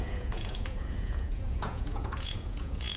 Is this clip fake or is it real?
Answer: fake